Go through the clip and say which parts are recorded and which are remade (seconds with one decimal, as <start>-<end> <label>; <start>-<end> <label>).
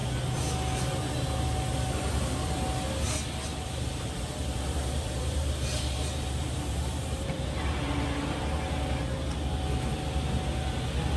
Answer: 0.0-3.5 recorded; 3.5-7.5 remade; 7.5-11.2 recorded